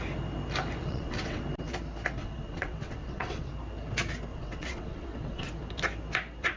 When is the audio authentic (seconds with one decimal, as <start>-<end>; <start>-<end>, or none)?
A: 0.0-0.8; 1.4-2.2; 3.5-4.3; 5.5-6.6